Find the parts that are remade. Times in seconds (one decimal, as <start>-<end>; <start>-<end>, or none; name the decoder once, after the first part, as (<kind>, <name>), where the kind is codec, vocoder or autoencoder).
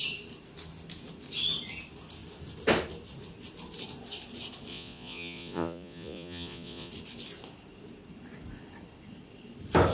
4.7-6.9 (vocoder, Vocos)